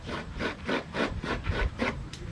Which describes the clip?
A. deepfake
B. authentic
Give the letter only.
A